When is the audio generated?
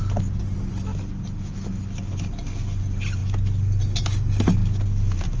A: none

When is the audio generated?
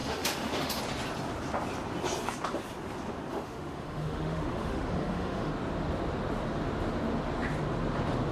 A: 0.0-0.8 (autoencoder, DAC-VAE); 3.3-5.5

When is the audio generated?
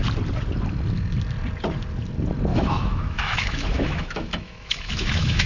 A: 2.5-5.5 (autoencoder, DAC-VAE)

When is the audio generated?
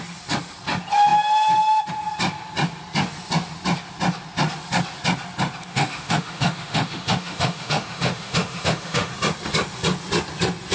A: 5.7-9.1 (autoencoder, DAC-VAE)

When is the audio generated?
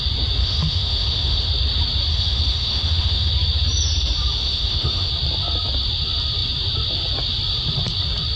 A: 0.4-1.5 (autoencoder, DAC-VAE); 2.1-3.3; 4.4-5.1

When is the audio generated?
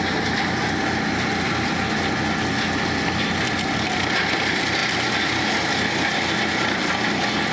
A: none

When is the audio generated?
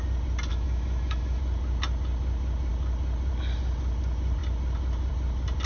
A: 0.5-1.4 (autoencoder, DAC-VAE)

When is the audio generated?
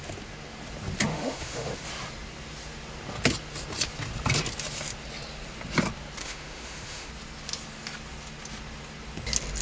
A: 1.1-1.7 (autoencoder, DAC-VAE); 6.2-7.1